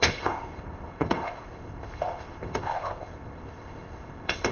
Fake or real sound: fake